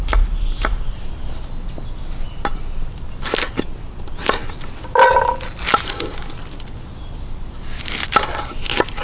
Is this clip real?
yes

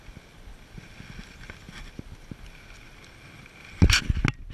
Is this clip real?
yes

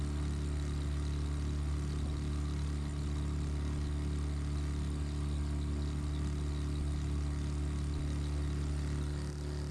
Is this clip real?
yes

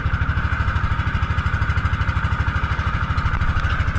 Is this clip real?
yes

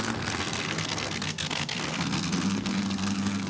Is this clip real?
no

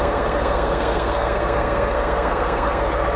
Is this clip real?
no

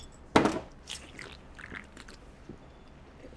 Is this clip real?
yes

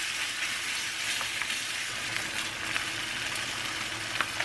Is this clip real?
yes